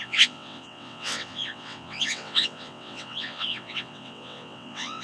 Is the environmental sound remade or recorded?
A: remade